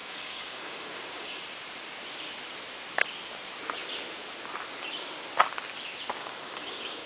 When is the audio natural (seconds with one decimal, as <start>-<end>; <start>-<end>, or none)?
1.4-6.2